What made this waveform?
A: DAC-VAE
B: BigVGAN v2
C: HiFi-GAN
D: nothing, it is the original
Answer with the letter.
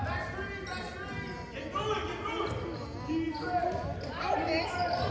D